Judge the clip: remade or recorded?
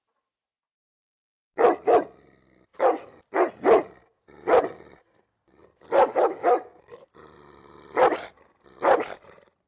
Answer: recorded